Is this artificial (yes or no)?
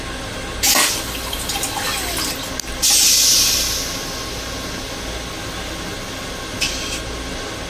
no